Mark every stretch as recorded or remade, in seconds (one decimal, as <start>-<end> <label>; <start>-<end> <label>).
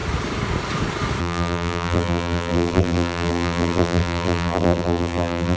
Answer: 0.0-1.2 recorded; 1.2-5.6 remade